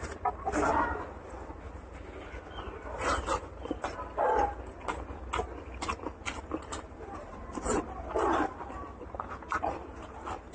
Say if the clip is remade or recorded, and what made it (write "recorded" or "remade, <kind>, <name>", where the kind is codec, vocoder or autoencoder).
recorded